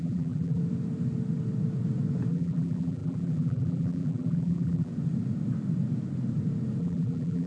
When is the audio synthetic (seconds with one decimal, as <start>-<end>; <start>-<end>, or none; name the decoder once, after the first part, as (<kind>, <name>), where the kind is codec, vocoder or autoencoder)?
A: 0.0-0.6 (vocoder, BigVGAN v2); 2.3-4.9; 6.8-7.5